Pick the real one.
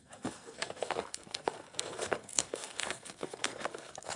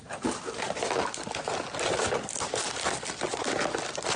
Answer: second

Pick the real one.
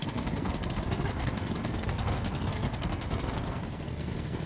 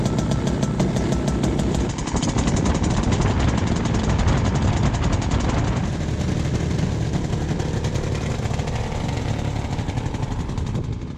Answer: second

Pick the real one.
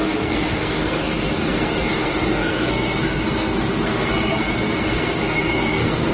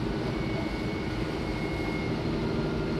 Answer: second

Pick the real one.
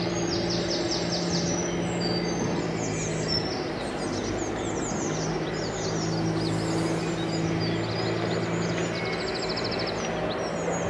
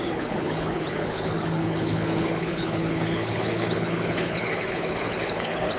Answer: first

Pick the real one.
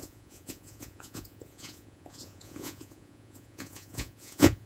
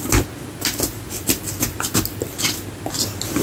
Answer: second